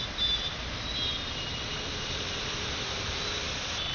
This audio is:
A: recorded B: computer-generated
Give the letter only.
A